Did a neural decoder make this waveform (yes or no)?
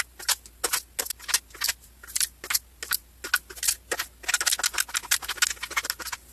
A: no